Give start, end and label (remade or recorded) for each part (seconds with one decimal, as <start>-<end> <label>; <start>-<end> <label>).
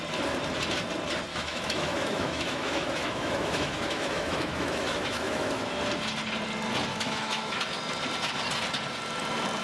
0.0-1.3 recorded; 1.3-5.8 remade; 5.8-6.9 recorded; 6.9-7.6 remade; 7.6-9.6 recorded